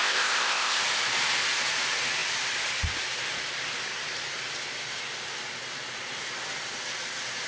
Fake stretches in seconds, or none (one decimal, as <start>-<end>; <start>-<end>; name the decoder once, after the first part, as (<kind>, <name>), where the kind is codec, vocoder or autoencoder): 0.0-0.8 (codec, ZipCodec)